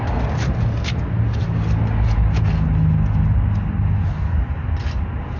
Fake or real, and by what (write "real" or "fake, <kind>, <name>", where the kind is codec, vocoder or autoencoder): real